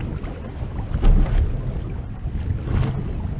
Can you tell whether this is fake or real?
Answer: real